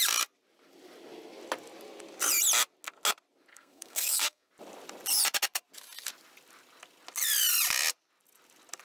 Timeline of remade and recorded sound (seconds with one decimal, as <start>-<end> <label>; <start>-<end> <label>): 0.0-3.5 recorded; 3.5-4.5 remade; 4.5-8.8 recorded